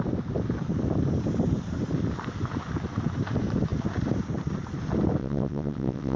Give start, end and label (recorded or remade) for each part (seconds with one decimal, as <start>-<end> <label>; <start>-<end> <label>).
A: 0.0-5.2 recorded; 5.2-6.2 remade